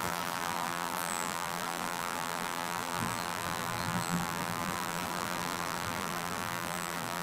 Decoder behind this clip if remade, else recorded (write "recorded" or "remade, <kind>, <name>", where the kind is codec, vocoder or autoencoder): remade, vocoder, BigVGAN v2